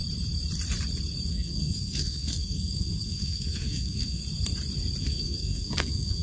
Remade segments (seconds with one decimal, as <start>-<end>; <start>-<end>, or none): 1.3-4.2; 5.0-6.2